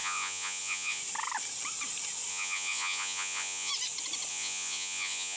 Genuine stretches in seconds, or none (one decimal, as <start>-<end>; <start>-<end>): 1.0-2.3; 3.7-4.3